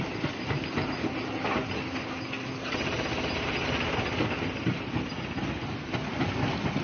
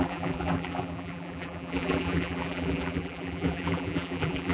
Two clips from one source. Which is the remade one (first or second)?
second